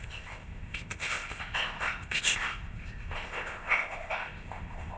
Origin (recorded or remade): remade